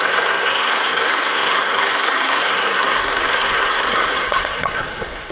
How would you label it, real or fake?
fake